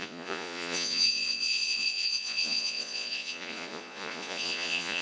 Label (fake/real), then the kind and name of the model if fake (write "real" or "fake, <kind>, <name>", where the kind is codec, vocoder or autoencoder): fake, vocoder, Vocos